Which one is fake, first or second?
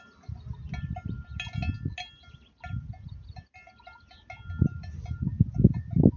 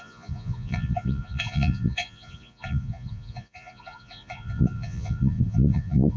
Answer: second